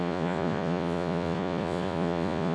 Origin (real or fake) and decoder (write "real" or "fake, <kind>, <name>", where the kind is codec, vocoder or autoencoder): fake, vocoder, Vocos